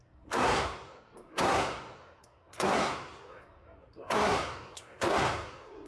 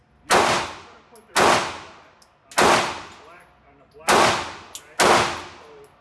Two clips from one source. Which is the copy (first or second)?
first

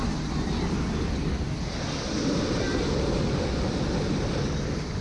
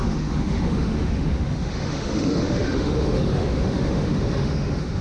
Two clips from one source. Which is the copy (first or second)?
second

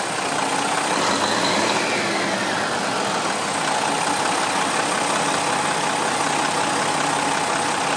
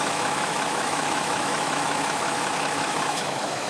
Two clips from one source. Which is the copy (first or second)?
second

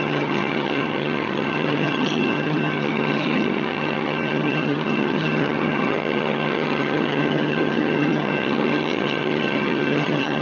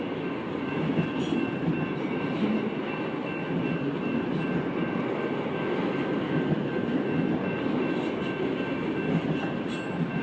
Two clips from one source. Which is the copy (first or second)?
first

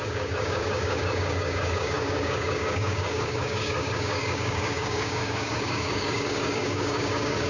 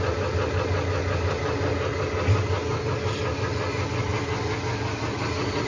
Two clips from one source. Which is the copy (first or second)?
first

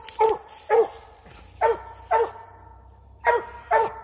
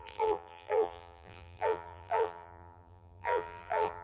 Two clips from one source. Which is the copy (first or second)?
second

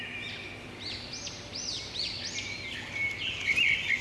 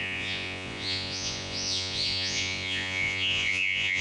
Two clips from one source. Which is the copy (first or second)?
second